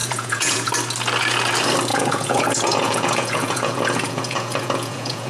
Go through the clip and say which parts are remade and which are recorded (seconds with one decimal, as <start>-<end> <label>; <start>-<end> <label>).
0.0-0.7 remade; 0.7-1.9 recorded; 1.9-5.3 remade